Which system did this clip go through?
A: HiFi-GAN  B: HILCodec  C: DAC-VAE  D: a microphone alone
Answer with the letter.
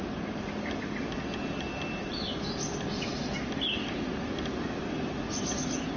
D